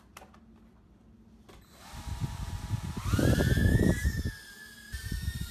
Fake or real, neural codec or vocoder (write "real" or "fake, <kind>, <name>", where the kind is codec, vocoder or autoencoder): fake, vocoder, BigVGAN v2